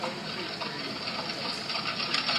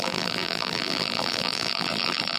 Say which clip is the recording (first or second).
first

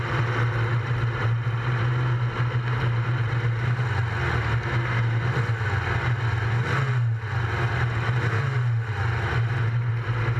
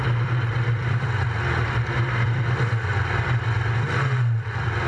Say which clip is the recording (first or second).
first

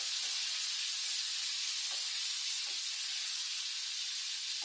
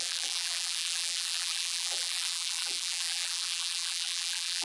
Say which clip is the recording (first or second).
first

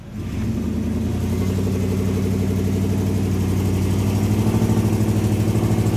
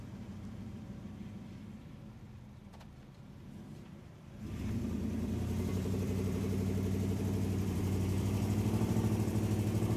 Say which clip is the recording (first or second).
first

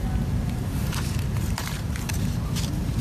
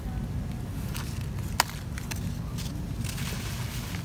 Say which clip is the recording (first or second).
second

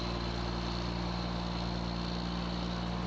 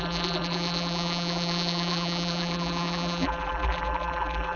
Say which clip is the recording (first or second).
first